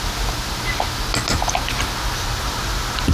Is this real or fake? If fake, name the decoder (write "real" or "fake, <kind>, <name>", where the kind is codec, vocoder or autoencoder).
real